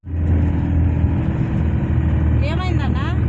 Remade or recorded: recorded